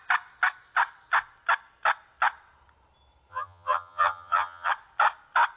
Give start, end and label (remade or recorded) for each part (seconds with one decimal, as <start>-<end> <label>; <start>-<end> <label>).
0.0-3.3 recorded; 3.3-4.7 remade; 4.7-5.6 recorded